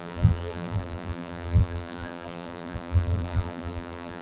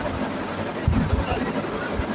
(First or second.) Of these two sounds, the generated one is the first